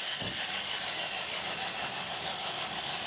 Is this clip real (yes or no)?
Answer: no